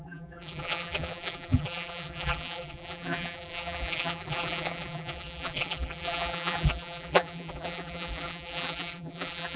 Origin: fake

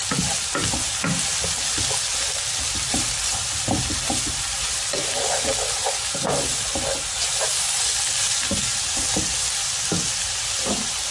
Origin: real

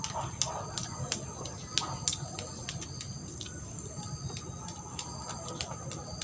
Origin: real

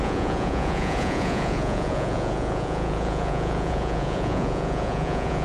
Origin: fake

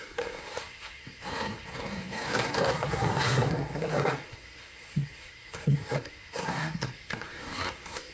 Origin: fake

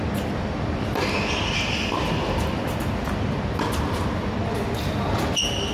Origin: real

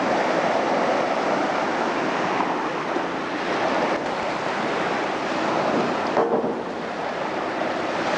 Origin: real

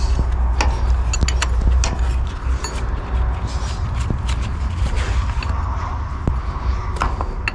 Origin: real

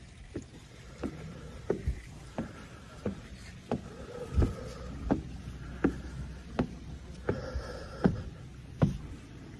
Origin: real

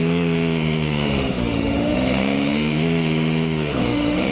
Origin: fake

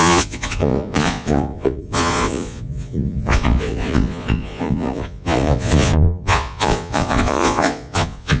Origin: fake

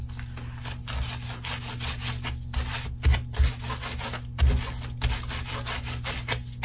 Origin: real